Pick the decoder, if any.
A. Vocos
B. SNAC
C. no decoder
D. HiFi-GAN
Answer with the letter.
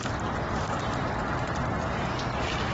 C